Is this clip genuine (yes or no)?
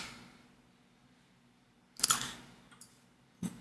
yes